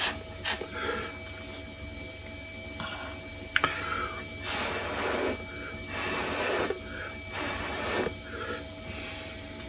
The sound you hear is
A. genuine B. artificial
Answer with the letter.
A